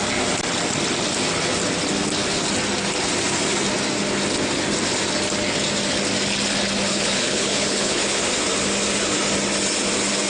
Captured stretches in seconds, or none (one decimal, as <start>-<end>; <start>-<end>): 0.0-6.9; 8.2-10.3